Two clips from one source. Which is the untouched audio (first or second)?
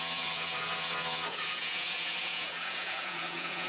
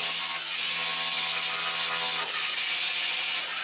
second